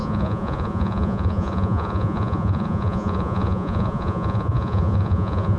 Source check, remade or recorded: remade